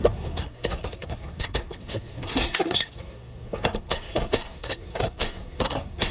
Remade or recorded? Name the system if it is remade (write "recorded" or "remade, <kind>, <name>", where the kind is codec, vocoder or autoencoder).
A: remade, codec, SNAC